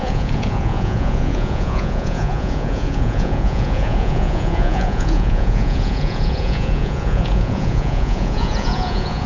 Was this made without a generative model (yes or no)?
no